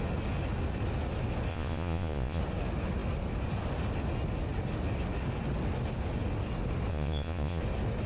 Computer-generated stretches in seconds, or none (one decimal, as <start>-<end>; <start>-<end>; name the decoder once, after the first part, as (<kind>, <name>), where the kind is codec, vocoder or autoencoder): 1.5-2.4 (vocoder, Vocos); 6.9-7.6